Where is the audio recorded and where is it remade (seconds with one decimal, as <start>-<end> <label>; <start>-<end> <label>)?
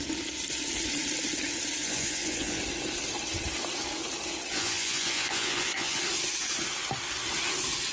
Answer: 0.0-1.8 recorded; 1.8-2.6 remade; 2.6-4.5 recorded; 4.5-6.0 remade; 6.0-7.9 recorded